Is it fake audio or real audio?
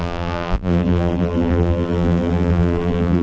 fake